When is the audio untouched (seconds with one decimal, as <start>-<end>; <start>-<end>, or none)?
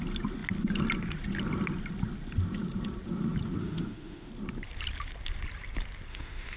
0.0-3.6; 4.3-6.1